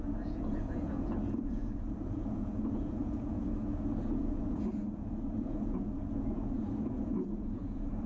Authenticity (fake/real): fake